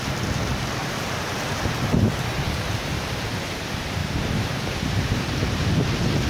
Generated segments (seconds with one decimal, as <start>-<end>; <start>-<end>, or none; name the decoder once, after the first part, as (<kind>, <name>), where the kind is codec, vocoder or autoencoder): 0.8-3.3 (vocoder, BigVGAN v2); 4.0-5.7